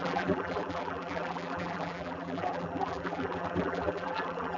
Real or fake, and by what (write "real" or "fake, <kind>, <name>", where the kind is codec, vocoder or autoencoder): fake, vocoder, BigVGAN v2